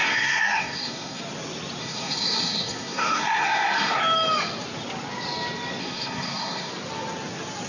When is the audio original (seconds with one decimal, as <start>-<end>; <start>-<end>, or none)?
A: 1.2-1.8; 4.0-5.8; 6.7-7.7